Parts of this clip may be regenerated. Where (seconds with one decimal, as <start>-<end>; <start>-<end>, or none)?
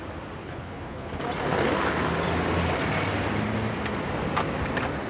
0.4-1.2